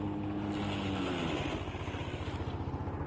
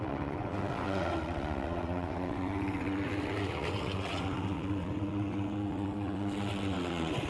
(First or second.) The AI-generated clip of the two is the second